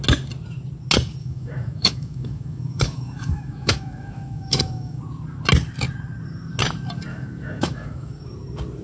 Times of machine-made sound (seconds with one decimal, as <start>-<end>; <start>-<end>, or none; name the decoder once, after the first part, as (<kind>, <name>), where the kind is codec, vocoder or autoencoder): 1.2-5.0 (autoencoder, DAC-VAE); 7.1-8.1